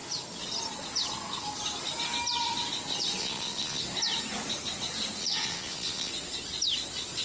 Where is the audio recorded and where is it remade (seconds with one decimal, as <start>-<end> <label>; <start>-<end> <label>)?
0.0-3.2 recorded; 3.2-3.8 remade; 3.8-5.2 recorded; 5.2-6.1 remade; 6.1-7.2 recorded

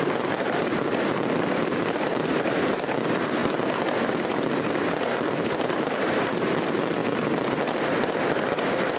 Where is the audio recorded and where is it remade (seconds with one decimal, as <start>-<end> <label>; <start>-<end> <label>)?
0.0-3.4 remade; 3.4-4.1 recorded; 4.1-7.0 remade; 7.0-8.6 recorded; 8.6-9.0 remade

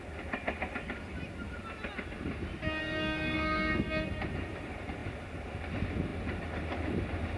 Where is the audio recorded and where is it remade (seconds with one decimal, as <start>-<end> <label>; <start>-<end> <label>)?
0.0-2.8 recorded; 2.8-4.1 remade; 4.1-7.4 recorded